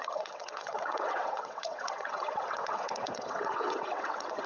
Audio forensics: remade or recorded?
remade